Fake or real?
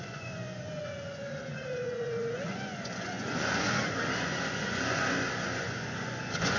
fake